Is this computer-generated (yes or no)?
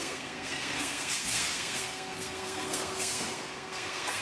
yes